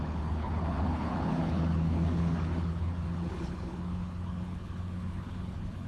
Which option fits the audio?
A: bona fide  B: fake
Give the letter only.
B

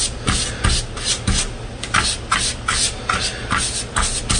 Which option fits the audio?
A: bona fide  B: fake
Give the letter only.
A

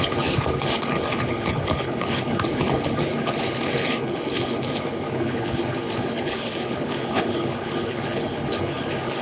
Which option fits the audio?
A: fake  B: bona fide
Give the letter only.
A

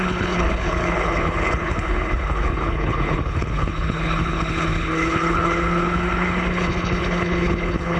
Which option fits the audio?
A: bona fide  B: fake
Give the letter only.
B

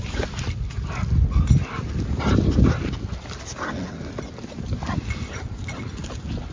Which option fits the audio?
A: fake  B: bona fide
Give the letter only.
B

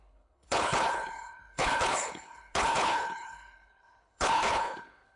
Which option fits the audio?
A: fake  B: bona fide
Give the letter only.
A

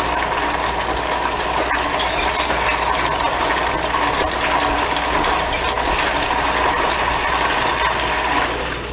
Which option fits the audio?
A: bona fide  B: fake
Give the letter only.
A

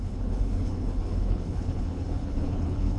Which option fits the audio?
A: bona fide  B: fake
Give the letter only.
B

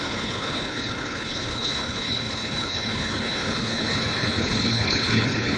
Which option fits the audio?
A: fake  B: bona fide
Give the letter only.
A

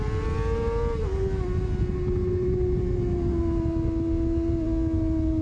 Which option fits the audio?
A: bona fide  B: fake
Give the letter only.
A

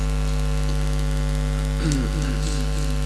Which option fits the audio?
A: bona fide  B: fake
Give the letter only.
A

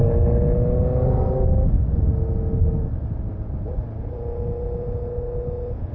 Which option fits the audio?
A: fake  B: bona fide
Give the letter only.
B